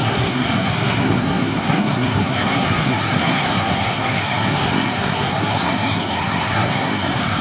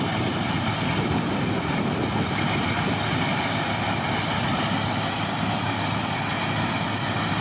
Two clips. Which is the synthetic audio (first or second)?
first